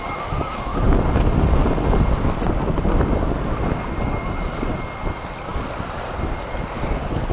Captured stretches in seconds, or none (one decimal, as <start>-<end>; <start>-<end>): 0.0-7.3